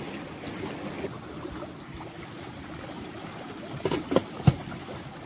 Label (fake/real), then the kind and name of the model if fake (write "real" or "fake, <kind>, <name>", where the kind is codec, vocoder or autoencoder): real